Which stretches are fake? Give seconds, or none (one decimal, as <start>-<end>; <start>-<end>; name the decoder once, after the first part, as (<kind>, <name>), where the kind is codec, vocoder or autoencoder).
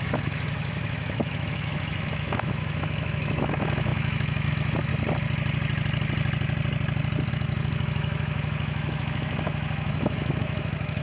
0.0-4.9 (autoencoder, DAC-VAE); 7.3-11.0